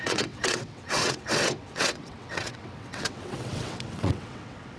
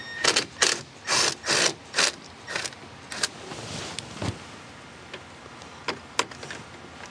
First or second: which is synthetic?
first